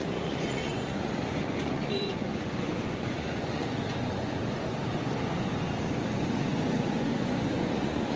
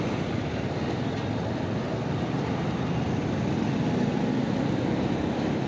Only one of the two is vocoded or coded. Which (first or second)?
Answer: first